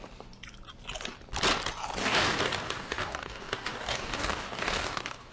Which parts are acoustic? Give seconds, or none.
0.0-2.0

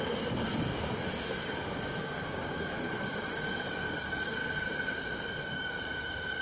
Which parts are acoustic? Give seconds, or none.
4.4-5.4

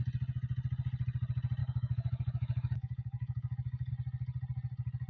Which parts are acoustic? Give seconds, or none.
0.0-1.6; 3.9-5.1

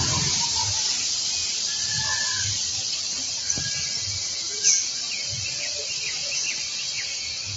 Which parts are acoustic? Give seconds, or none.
0.0-7.6

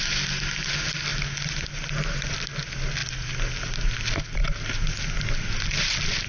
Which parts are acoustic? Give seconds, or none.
0.0-6.3